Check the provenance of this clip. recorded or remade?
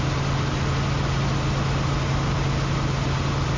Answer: recorded